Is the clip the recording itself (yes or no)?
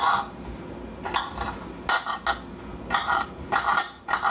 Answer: yes